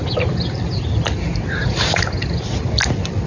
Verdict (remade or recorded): recorded